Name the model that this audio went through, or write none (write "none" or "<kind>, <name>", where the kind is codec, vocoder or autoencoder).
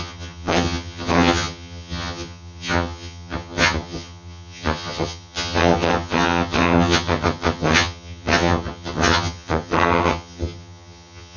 vocoder, HiFi-GAN